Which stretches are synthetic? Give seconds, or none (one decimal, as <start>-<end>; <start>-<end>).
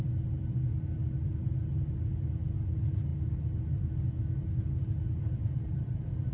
none